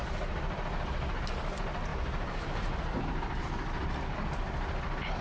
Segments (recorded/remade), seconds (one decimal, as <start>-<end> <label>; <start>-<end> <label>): 0.0-5.2 recorded

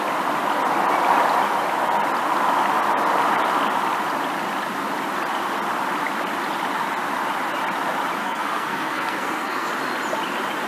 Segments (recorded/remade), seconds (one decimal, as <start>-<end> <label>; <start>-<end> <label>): 0.0-8.2 recorded; 8.2-9.7 remade; 9.7-10.7 recorded

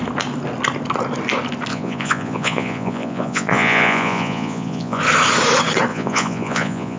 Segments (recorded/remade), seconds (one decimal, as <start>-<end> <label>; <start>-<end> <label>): 0.0-1.7 recorded; 1.7-5.0 remade; 5.0-5.9 recorded; 5.9-7.0 remade

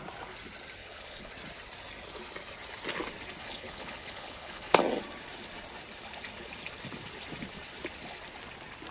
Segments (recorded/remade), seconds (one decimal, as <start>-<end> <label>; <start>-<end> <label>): 0.0-0.8 recorded; 0.8-1.3 remade; 1.3-3.4 recorded; 3.4-4.8 remade; 4.8-8.9 recorded